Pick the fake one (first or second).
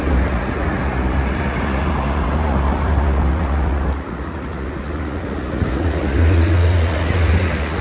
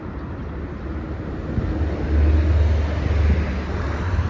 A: first